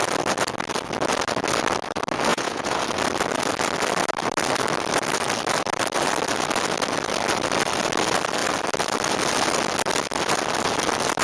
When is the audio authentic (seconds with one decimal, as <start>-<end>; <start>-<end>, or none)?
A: 0.0-2.3; 2.8-11.2